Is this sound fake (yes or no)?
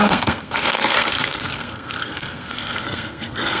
yes